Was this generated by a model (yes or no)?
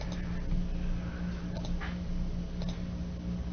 no